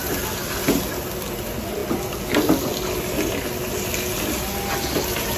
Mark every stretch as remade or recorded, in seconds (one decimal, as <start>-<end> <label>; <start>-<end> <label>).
0.0-5.4 recorded